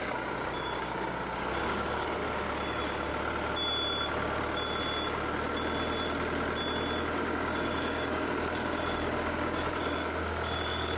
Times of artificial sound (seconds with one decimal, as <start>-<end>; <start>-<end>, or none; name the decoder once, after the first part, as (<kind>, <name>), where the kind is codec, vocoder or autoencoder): 0.0-2.2 (codec, DAC); 2.7-3.1; 7.0-11.0